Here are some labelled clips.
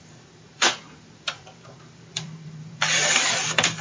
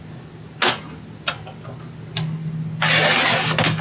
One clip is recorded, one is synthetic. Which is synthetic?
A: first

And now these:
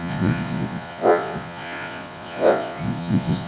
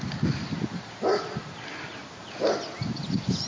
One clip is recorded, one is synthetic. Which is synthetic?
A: first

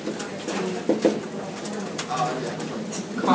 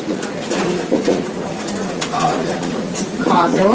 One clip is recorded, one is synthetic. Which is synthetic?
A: second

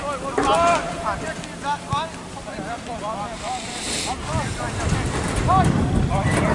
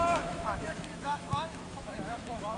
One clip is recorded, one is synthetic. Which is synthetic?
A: second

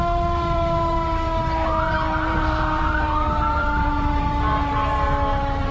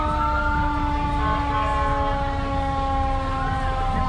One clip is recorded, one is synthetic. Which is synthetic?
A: first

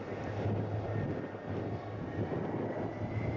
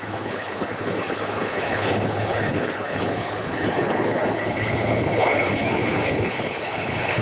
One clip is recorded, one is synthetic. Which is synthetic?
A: second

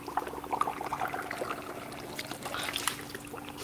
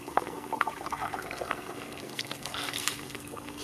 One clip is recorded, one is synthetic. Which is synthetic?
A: second